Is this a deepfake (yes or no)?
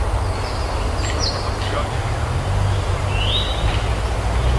no